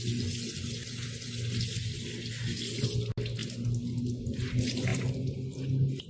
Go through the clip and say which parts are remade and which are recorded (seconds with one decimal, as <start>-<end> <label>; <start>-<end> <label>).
0.0-6.1 recorded